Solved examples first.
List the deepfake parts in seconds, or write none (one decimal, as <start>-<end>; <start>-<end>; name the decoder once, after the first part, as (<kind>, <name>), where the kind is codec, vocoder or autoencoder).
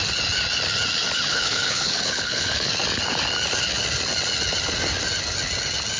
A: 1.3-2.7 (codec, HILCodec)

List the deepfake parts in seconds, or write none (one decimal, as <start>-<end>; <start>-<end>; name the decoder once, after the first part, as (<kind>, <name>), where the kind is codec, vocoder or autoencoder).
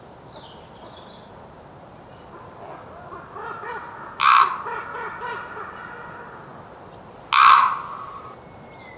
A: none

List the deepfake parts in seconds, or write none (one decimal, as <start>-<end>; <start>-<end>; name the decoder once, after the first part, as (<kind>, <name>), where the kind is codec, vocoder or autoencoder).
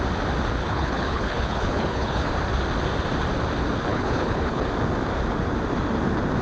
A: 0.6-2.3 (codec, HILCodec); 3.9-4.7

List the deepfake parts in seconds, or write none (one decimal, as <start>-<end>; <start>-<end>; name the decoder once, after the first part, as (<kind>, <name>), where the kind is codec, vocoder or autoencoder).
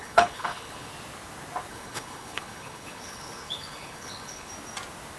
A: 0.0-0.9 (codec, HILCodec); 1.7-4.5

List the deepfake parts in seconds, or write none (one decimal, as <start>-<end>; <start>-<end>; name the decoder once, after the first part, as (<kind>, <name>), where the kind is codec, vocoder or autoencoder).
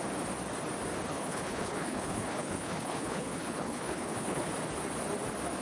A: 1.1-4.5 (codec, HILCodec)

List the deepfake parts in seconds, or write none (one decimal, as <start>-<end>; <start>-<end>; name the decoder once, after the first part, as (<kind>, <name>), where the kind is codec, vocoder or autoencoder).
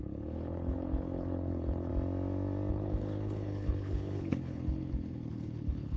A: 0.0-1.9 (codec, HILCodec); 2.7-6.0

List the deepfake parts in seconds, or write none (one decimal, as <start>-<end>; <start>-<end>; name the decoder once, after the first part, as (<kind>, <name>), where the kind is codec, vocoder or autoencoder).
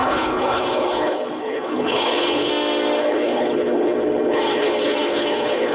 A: 0.0-2.5 (codec, HILCodec); 3.0-5.7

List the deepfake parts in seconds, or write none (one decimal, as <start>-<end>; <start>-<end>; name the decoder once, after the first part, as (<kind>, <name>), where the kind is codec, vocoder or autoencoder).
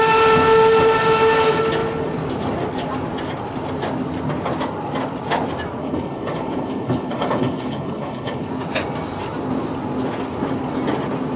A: 5.8-8.5 (codec, HILCodec)